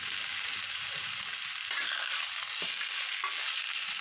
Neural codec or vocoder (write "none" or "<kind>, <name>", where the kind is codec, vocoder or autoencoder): none